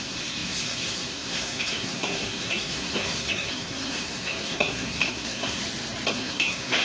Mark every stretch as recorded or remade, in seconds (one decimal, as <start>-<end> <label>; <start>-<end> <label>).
0.0-5.6 remade; 5.6-6.1 recorded; 6.1-6.8 remade

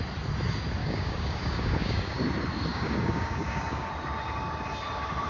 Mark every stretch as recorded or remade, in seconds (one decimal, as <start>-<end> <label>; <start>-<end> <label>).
0.0-0.8 recorded; 0.8-2.2 remade; 2.2-2.7 recorded; 2.7-3.9 remade; 3.9-5.3 recorded

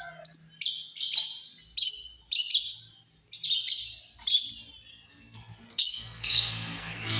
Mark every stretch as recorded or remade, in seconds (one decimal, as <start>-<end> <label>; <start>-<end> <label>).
0.0-4.9 recorded; 4.9-7.2 remade

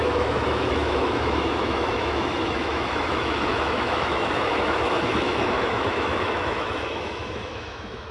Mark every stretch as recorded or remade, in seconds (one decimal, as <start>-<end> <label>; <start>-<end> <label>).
0.0-8.1 remade